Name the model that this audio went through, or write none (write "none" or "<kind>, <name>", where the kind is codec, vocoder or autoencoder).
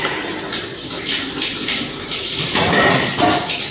vocoder, BigVGAN v2